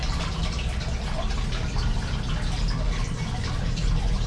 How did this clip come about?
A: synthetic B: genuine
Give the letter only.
B